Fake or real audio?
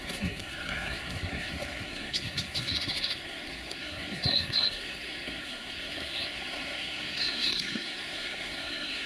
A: fake